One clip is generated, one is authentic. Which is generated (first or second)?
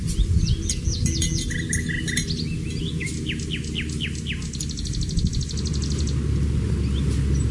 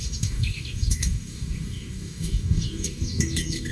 second